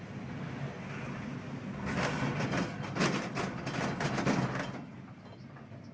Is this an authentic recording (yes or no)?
yes